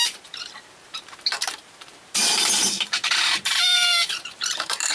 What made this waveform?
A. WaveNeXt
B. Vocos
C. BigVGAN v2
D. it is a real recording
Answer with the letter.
C